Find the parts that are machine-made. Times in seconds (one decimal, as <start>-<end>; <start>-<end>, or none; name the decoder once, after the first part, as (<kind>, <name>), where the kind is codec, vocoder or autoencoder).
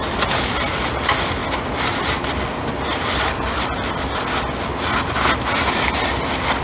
none